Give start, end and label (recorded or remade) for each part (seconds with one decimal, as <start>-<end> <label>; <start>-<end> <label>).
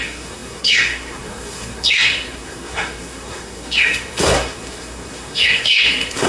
0.0-6.3 remade